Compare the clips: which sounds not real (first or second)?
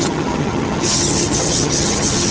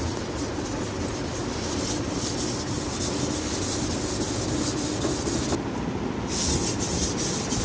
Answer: first